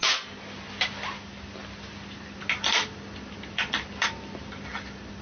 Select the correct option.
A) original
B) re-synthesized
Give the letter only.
A